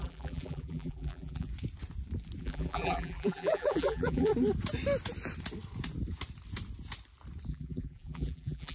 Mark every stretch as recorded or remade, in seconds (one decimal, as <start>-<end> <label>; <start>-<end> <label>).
0.0-1.5 remade; 1.5-2.4 recorded; 2.4-4.3 remade; 4.3-7.5 recorded; 7.5-8.7 remade